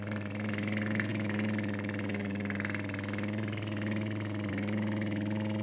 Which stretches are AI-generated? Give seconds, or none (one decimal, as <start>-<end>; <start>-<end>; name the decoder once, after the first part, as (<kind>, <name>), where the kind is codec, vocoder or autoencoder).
none